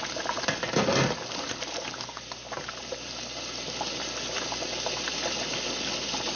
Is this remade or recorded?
recorded